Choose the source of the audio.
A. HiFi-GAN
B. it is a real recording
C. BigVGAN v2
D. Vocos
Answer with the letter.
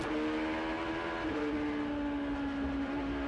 B